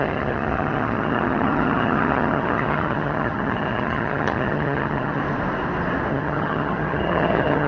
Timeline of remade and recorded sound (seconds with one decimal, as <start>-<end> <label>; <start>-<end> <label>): 0.0-5.2 remade; 5.2-6.1 recorded; 6.1-7.7 remade